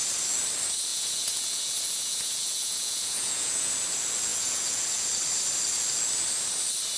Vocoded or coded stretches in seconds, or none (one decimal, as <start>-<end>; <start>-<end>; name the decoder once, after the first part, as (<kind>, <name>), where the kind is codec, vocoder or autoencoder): 0.9-3.7 (vocoder, Vocos); 4.3-5.1